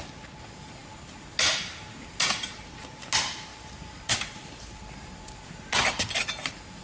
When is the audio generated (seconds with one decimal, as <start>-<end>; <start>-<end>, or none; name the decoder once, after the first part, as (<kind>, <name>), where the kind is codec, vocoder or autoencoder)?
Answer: 3.5-5.1 (vocoder, BigVGAN v2)